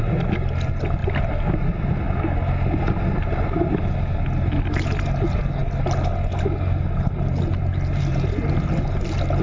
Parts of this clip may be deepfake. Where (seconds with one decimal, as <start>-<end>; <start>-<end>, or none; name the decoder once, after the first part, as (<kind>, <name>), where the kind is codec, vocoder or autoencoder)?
1.0-2.1 (vocoder, BigVGAN v2)